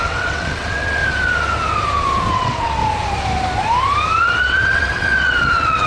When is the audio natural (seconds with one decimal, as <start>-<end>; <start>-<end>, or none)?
1.0-2.3; 2.8-4.2